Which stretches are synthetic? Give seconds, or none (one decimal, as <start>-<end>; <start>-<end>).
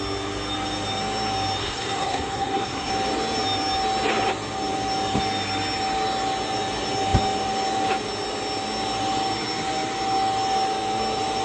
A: 1.6-2.9